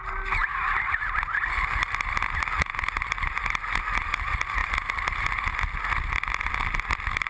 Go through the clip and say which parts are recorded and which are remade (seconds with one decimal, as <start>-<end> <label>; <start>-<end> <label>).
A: 0.0-0.4 recorded; 0.4-1.2 remade; 1.2-7.3 recorded